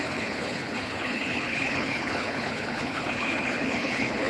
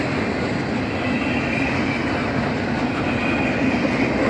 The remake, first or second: first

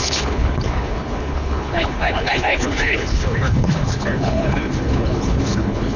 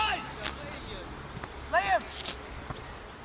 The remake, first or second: first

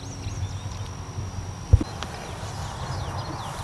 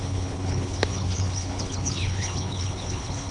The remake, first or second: second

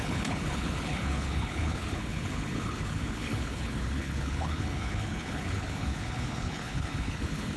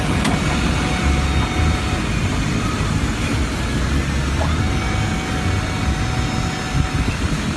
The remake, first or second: first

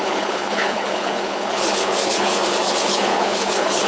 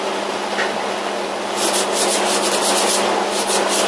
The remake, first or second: first